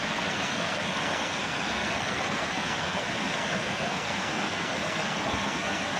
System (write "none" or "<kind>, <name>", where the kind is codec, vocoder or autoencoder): codec, SNAC